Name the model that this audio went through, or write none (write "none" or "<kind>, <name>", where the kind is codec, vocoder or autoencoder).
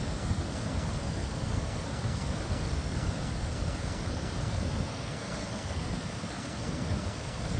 codec, SNAC